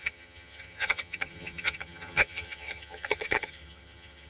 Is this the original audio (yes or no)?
no